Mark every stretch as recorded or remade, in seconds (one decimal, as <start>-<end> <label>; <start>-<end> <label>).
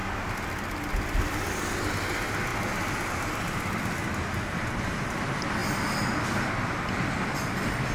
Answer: 0.0-7.9 recorded